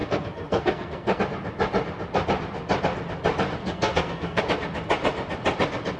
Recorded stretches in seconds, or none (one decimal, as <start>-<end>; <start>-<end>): 1.2-3.6; 4.4-6.0